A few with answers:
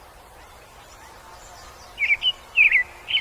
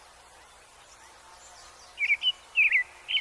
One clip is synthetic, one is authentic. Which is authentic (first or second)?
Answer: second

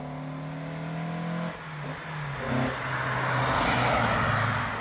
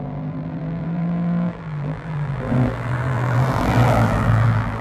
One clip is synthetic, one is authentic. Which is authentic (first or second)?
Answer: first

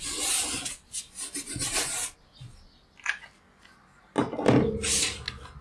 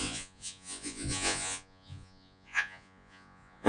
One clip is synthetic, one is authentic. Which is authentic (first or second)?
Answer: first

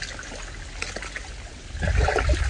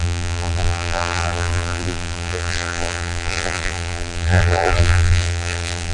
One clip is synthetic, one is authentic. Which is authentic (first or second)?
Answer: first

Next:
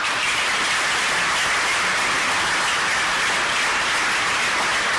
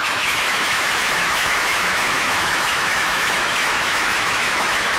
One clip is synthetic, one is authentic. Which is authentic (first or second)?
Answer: first